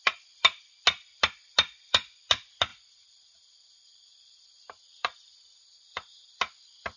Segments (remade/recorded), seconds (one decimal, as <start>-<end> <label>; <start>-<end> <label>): 0.0-2.7 recorded; 2.7-6.3 remade; 6.3-7.0 recorded